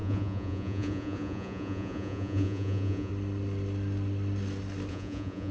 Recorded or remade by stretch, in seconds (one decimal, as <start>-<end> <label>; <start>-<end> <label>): 0.0-3.1 remade; 3.1-4.9 recorded; 4.9-5.5 remade